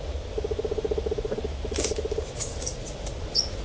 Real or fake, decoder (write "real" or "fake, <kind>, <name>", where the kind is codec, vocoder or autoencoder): real